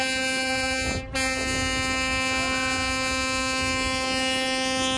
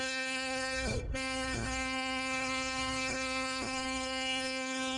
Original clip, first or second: first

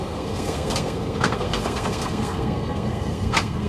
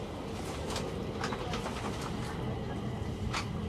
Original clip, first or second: second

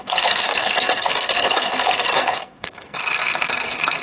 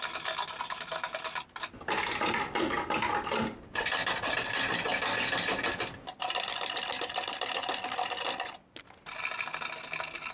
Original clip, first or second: second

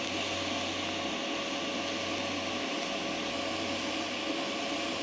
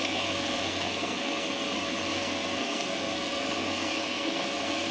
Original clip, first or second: first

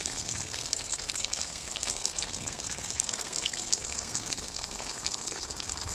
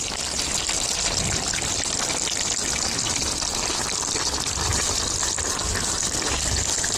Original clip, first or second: second